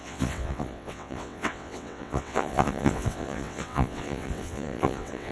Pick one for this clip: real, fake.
fake